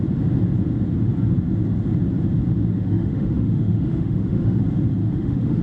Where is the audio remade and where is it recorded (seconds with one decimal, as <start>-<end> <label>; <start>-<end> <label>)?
0.0-2.7 recorded; 2.7-4.6 remade; 4.6-5.0 recorded; 5.0-5.6 remade